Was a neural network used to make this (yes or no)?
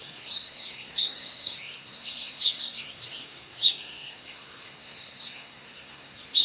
yes